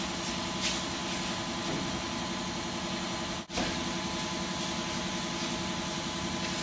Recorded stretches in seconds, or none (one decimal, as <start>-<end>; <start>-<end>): 0.0-6.6